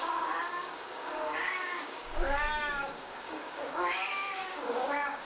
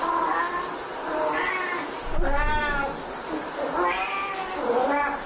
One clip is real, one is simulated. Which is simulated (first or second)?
first